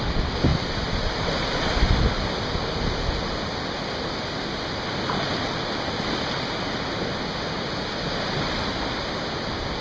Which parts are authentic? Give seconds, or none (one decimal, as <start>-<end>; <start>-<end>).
0.0-9.8